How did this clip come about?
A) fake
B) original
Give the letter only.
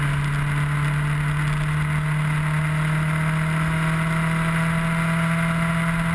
B